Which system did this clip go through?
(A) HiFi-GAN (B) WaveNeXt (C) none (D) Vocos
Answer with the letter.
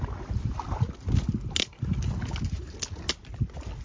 C